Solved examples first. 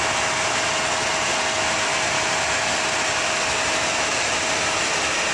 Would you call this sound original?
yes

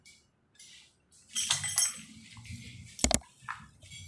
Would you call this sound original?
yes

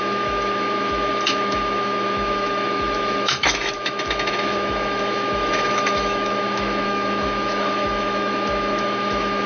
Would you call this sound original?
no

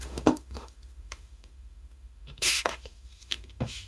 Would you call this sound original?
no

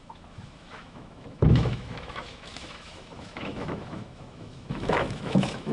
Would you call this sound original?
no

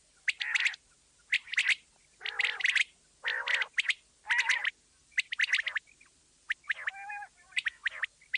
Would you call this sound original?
yes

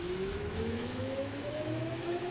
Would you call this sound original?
no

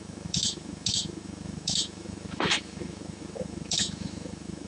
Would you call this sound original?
no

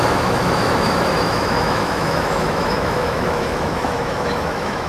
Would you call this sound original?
no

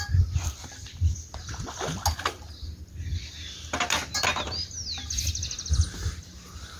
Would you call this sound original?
yes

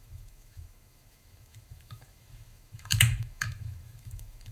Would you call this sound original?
no